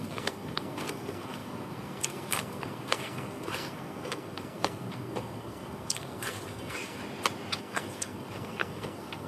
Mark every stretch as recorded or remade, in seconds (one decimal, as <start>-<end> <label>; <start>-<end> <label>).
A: 0.0-7.0 remade; 7.0-7.6 recorded; 7.6-9.3 remade